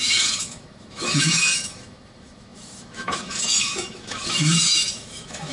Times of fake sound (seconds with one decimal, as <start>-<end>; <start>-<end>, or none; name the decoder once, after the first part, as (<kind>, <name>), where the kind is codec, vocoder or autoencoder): 0.0-5.5 (autoencoder, DAC-VAE)